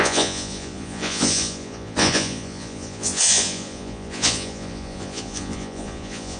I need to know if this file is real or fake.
fake